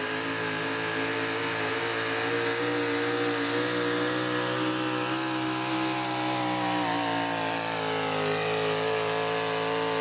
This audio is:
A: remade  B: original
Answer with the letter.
B